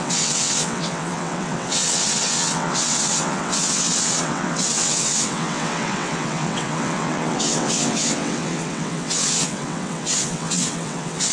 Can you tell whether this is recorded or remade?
remade